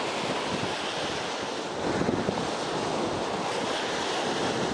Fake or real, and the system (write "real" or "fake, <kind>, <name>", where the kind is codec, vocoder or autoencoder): real